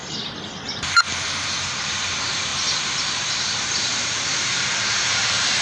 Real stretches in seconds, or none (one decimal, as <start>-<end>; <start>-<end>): 2.5-3.1